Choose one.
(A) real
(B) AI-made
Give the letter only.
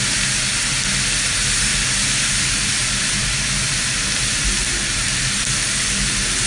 A